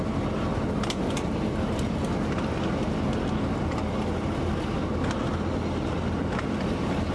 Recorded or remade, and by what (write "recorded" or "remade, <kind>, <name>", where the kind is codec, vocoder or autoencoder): recorded